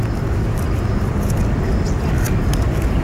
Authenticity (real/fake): real